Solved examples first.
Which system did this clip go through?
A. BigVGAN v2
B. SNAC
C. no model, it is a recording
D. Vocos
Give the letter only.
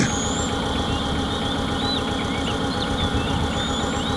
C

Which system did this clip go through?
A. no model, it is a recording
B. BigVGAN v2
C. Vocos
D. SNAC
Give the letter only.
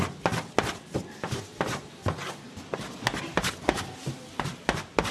A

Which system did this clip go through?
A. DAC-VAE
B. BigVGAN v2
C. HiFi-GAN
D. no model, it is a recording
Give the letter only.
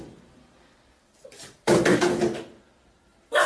B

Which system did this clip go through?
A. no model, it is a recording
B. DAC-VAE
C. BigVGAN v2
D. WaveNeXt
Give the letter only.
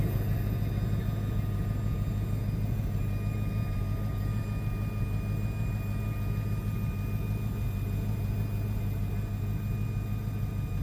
A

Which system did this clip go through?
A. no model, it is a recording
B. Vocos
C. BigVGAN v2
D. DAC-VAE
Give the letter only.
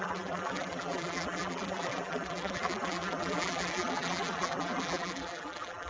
C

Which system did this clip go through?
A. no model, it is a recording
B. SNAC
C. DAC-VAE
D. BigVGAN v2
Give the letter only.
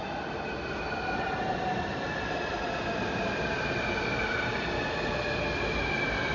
A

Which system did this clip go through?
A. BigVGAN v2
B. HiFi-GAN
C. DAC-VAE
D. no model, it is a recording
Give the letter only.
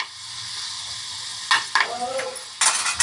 D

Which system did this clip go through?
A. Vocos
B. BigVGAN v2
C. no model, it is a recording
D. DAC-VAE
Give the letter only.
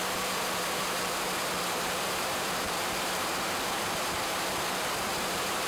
B